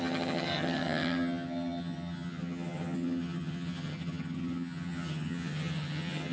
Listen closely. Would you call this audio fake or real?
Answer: fake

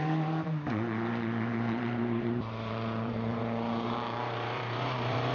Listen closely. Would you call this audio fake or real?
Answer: fake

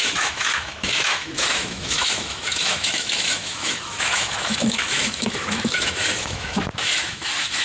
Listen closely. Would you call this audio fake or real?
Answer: fake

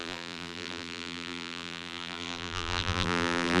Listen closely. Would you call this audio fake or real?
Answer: fake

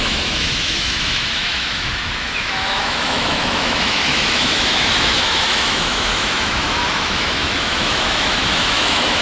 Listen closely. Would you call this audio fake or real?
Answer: fake